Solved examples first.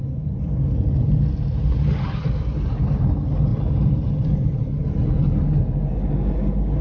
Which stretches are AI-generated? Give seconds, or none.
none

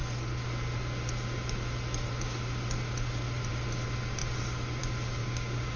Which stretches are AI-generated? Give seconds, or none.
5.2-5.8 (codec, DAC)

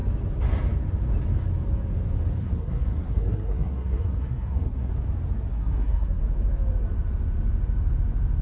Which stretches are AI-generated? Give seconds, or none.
2.4-4.9 (codec, SNAC); 5.5-6.2